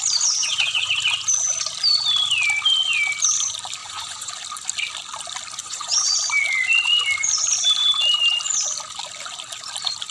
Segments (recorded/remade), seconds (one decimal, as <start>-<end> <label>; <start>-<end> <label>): 0.0-0.4 recorded; 0.4-0.9 remade; 0.9-3.8 recorded; 3.8-4.3 remade; 4.3-5.6 recorded; 5.6-6.2 remade; 6.2-10.1 recorded